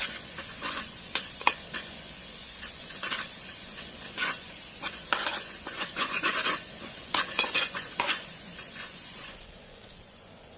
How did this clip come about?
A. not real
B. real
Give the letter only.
A